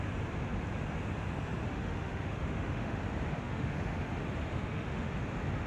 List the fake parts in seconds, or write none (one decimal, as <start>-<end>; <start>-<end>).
1.7-3.0; 3.4-4.1; 4.5-5.1